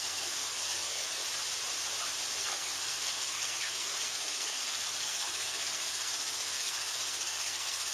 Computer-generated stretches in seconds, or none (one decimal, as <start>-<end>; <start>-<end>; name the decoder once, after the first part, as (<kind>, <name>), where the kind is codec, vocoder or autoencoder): 0.0-1.2 (codec, SNAC); 2.4-7.9